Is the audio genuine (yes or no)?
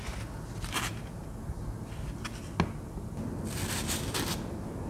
yes